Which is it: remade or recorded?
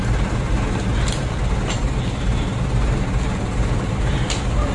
recorded